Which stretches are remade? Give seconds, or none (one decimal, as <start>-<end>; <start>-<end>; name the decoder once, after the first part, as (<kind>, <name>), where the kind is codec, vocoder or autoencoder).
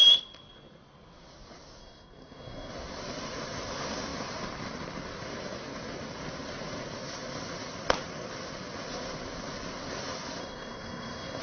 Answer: 1.8-2.7 (codec, SNAC); 10.4-11.4